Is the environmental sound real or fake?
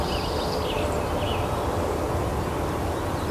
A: real